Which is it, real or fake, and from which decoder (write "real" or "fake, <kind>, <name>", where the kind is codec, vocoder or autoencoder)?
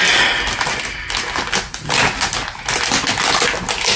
real